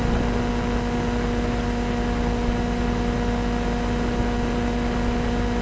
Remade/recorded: recorded